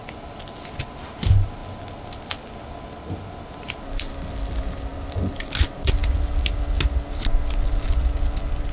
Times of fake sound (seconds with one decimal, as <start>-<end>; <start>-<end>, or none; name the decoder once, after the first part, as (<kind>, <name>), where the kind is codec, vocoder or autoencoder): 4.9-5.4 (vocoder, BigVGAN v2)

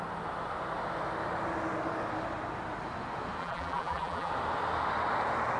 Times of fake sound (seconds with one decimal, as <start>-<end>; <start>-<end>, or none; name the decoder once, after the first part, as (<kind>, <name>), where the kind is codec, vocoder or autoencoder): 3.4-4.3 (vocoder, BigVGAN v2)